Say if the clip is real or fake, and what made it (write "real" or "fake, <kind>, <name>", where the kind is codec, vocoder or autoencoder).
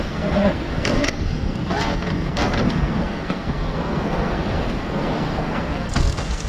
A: fake, codec, SNAC